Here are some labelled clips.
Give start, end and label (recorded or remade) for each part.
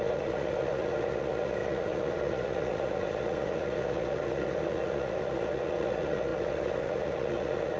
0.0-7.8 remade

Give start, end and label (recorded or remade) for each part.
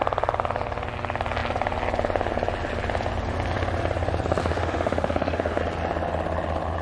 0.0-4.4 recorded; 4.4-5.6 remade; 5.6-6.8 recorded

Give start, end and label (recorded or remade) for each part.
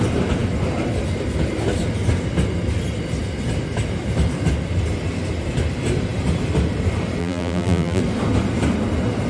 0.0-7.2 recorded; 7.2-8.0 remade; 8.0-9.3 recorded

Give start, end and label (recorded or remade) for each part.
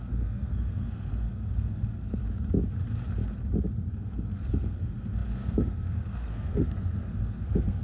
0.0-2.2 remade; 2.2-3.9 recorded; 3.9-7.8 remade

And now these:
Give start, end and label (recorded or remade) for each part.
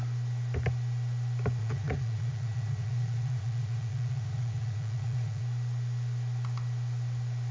0.0-1.6 recorded; 1.6-5.4 remade; 5.4-7.5 recorded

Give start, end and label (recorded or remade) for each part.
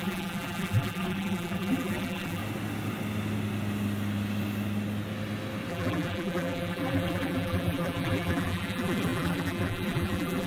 0.0-2.4 remade; 2.4-5.7 recorded; 5.7-10.5 remade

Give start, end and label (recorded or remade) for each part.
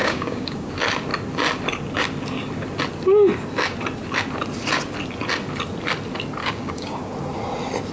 0.0-0.7 remade; 0.7-6.4 recorded; 6.4-7.1 remade; 7.1-7.9 recorded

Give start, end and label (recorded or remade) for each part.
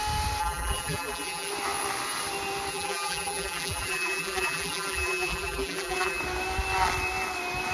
0.0-0.4 recorded; 0.4-1.5 remade; 1.5-2.7 recorded; 2.7-6.2 remade; 6.2-7.7 recorded